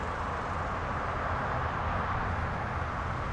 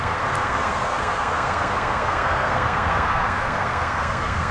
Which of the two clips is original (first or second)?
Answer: first